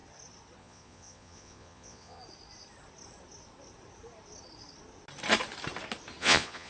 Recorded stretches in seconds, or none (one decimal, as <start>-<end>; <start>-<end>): 0.0-0.6; 2.2-6.2